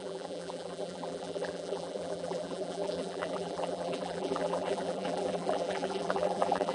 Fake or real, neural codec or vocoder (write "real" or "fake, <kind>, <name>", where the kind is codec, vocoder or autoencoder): fake, vocoder, BigVGAN v2